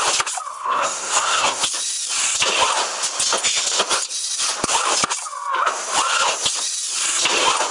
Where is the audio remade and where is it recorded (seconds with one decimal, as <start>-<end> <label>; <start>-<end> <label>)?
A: 0.0-0.5 recorded; 0.5-1.6 remade; 1.6-7.7 recorded